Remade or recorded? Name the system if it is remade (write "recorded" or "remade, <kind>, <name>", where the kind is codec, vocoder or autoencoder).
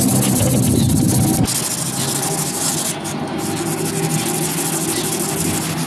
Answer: recorded